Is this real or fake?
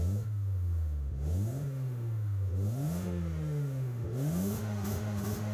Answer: fake